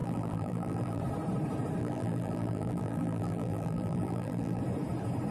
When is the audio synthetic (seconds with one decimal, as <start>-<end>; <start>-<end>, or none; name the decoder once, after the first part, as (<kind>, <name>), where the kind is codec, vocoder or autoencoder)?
0.0-1.0 (vocoder, BigVGAN v2); 1.8-4.6

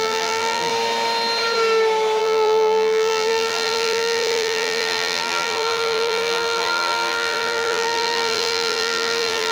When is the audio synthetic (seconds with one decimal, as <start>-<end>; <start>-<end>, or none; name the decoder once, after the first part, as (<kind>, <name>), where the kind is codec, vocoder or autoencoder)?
0.0-0.7 (vocoder, BigVGAN v2); 2.2-9.5

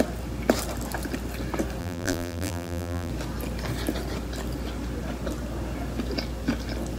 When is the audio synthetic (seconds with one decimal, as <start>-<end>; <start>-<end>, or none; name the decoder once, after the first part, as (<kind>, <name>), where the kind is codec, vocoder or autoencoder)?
1.8-3.1 (vocoder, BigVGAN v2)

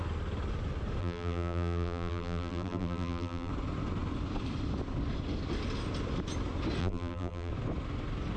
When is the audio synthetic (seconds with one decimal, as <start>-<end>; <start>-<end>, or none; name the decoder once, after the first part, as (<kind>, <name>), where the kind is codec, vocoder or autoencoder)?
1.0-3.5 (vocoder, BigVGAN v2); 6.8-7.5